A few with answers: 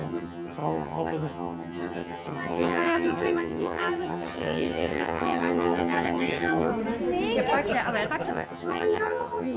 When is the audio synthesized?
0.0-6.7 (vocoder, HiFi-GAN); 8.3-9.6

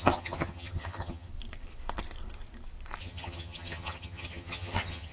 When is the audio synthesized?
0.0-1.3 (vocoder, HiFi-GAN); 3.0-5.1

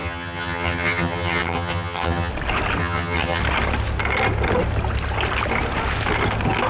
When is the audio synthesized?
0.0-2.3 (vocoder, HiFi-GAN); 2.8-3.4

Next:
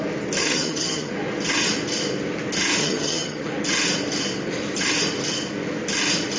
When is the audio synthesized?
0.4-1.1 (vocoder, HiFi-GAN); 2.8-3.5

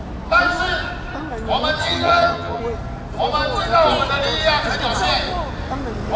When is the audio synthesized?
1.8-2.6 (vocoder, HiFi-GAN)

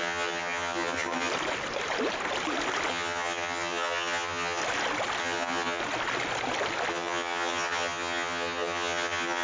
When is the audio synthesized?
0.0-1.3 (vocoder, HiFi-GAN); 2.9-4.6; 5.2-5.8; 6.9-9.4